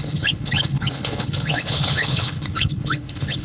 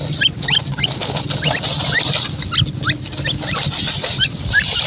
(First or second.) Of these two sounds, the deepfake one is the first